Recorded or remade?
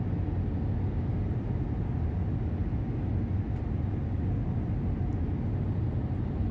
recorded